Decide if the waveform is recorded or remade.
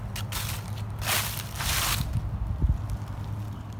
recorded